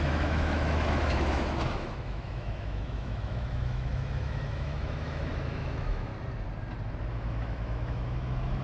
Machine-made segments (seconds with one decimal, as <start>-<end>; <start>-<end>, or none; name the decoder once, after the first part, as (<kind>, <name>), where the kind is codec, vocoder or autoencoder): 0.0-6.1 (autoencoder, DAC-VAE); 7.1-8.6